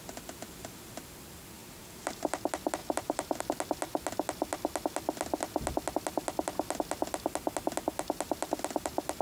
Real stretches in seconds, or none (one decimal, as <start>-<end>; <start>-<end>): 0.0-1.6; 2.4-2.8; 3.4-9.2